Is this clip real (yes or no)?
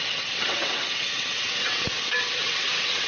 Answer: no